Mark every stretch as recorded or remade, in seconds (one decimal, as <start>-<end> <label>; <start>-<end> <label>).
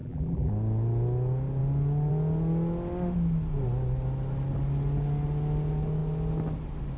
0.0-0.5 remade; 0.5-7.0 recorded